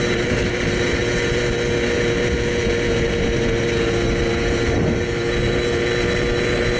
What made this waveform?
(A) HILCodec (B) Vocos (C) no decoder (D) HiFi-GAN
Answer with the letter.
C